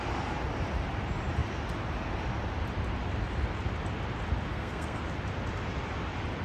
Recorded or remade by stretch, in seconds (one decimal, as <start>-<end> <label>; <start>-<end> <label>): 0.0-4.5 recorded; 4.5-5.0 remade; 5.0-6.4 recorded